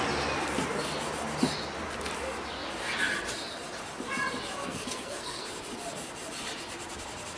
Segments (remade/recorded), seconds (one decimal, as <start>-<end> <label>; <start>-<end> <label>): 0.0-4.6 recorded; 4.6-5.5 remade; 5.5-7.4 recorded

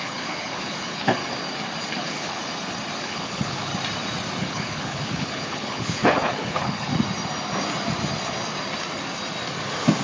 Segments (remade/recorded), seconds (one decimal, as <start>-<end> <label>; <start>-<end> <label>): 0.0-1.2 remade; 1.2-1.9 recorded; 1.9-2.4 remade; 2.4-3.0 recorded; 3.0-3.7 remade; 3.7-4.4 recorded; 4.4-6.9 remade; 6.9-10.0 recorded

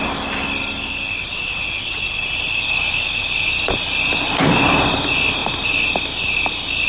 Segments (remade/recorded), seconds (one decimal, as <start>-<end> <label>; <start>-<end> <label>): 0.0-1.2 recorded; 1.2-2.3 remade; 2.3-6.9 recorded

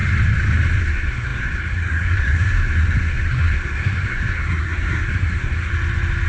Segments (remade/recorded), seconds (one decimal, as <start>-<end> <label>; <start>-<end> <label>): 0.0-0.8 recorded; 0.8-5.7 remade; 5.7-6.3 recorded

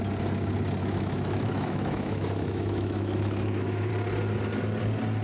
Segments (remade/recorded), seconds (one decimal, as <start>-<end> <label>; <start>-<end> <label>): 0.0-0.8 recorded; 0.8-3.9 remade; 3.9-5.2 recorded

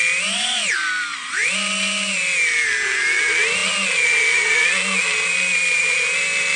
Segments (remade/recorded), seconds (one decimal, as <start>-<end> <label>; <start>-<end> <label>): 0.0-6.6 recorded

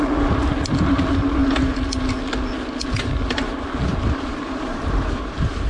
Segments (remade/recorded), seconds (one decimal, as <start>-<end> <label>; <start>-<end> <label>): 0.0-3.9 recorded; 3.9-5.7 remade